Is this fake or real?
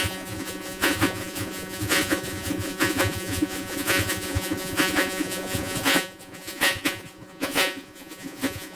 fake